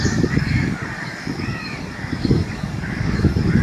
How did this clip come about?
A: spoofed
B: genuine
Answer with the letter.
A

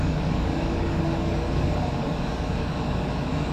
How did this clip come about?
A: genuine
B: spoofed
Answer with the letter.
B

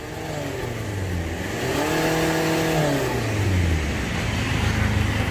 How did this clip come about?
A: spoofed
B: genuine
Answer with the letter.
B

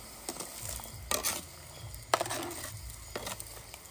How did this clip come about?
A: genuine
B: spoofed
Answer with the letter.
A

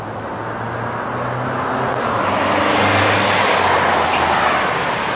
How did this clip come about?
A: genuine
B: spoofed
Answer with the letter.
A